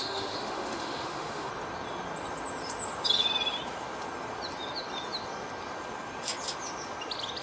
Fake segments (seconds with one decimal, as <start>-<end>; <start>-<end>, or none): 0.0-1.5